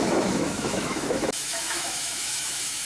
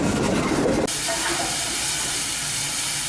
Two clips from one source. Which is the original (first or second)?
second